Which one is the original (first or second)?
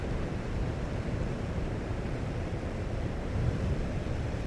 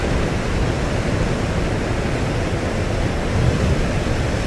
second